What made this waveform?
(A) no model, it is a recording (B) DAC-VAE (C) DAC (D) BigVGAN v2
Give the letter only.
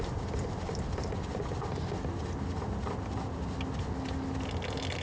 A